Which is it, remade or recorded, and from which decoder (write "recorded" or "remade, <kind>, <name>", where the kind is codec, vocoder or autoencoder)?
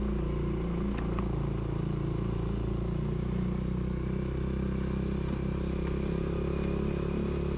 recorded